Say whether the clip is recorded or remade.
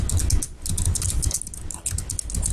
recorded